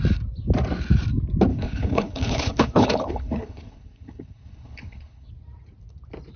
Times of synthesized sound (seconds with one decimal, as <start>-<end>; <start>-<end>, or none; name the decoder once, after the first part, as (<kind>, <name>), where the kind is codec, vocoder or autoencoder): 1.5-5.3 (codec, HILCodec)